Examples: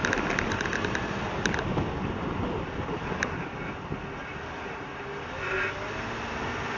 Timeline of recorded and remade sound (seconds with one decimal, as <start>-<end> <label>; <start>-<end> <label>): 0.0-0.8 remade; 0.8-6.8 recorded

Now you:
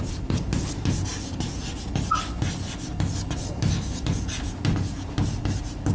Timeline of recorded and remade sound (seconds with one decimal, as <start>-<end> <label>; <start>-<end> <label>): 0.0-5.9 recorded

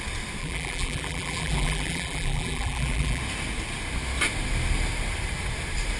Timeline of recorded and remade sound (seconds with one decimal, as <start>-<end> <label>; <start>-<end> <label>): 0.0-0.4 recorded; 0.4-3.2 remade; 3.2-6.0 recorded